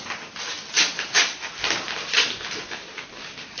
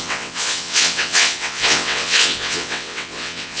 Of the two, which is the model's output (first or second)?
second